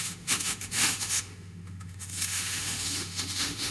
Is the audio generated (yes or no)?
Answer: yes